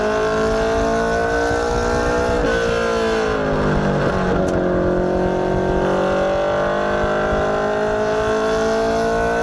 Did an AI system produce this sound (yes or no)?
no